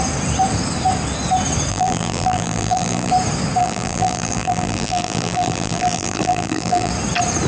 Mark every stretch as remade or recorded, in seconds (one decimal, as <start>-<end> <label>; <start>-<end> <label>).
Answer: 0.0-1.7 recorded; 1.7-3.1 remade; 3.1-3.6 recorded; 3.6-6.9 remade; 6.9-7.5 recorded